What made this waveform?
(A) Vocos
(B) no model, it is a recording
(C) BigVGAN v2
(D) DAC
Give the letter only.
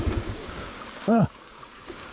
D